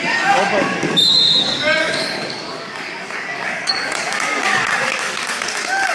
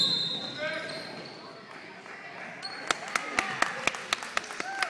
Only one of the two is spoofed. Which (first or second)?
first